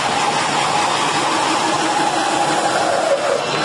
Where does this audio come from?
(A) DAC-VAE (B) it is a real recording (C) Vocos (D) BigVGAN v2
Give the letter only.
B